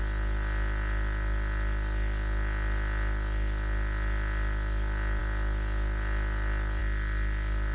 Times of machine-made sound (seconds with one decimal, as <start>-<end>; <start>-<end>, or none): none